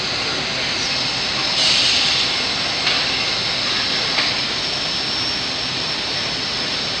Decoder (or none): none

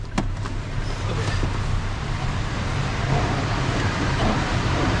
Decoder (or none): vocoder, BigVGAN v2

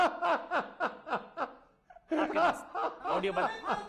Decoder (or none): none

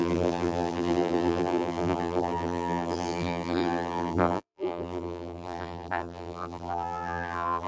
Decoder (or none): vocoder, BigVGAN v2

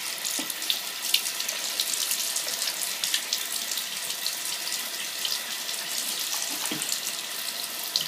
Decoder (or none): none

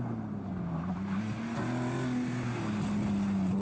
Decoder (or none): none